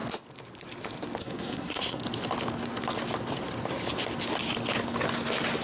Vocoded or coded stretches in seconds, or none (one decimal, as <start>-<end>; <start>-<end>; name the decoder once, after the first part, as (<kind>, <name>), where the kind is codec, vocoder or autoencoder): 1.2-2.0 (codec, SNAC)